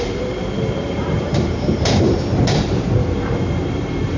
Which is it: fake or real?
fake